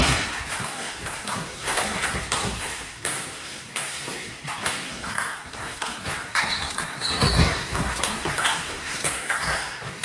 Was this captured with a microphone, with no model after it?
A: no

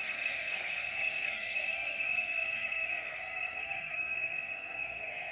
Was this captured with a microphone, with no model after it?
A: no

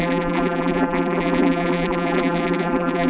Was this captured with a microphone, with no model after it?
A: no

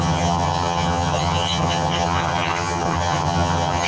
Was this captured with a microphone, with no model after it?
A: no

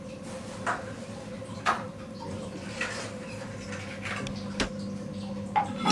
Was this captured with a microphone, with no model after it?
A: yes